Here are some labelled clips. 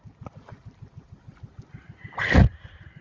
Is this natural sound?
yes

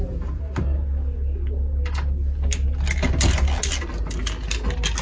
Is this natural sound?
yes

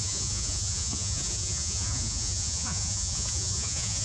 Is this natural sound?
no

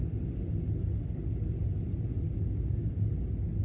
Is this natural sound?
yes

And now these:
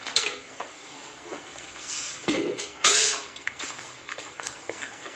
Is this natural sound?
no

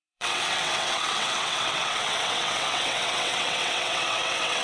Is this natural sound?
no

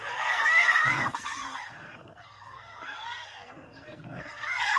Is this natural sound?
no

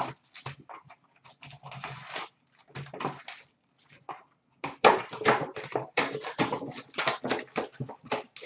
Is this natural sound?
yes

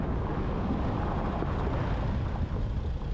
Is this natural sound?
yes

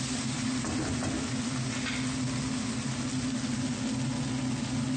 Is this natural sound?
yes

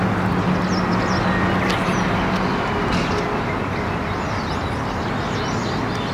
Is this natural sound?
yes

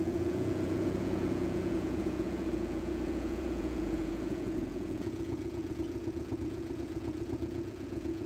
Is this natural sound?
no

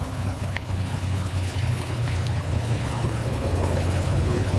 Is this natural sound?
no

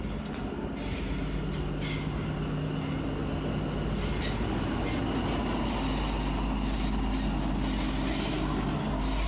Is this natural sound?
yes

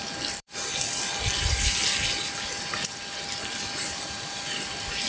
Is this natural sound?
no